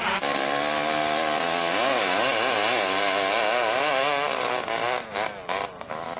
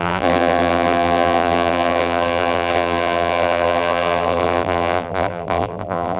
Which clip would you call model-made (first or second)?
second